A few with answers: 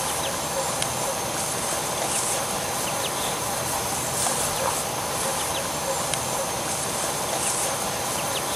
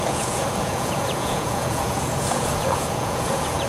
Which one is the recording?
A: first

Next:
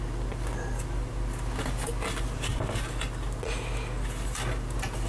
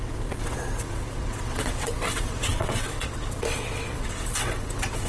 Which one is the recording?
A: first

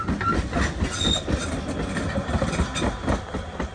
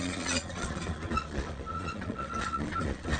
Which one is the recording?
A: first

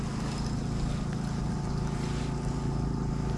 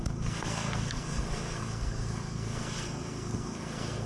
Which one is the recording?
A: first